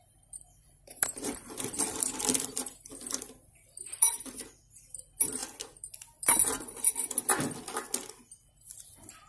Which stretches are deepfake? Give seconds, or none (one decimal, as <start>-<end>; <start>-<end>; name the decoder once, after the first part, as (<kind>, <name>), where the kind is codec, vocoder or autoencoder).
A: 0.0-5.4 (vocoder, BigVGAN v2)